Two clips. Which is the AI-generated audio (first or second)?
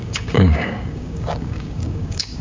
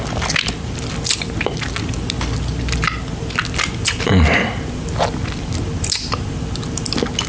first